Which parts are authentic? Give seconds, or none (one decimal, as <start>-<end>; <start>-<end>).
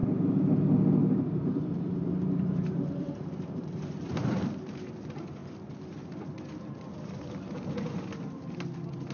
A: 0.6-1.0; 4.7-9.1